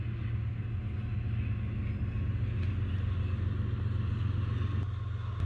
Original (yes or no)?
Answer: yes